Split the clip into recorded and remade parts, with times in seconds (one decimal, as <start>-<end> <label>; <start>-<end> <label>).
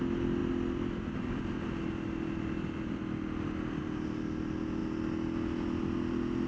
0.0-6.5 recorded